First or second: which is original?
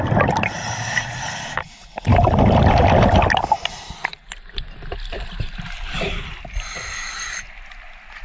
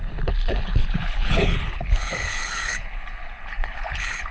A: first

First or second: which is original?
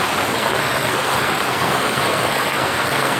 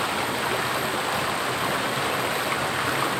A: second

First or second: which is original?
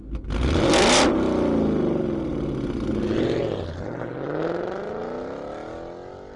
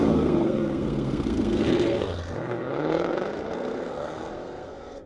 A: first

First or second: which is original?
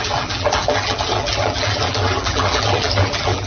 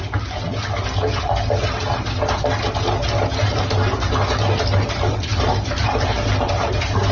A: second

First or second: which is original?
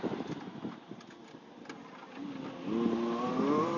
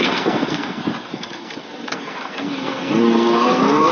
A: first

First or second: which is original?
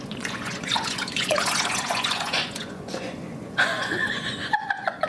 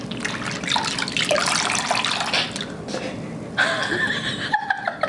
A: second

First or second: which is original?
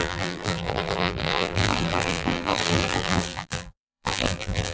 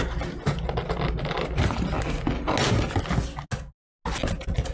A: second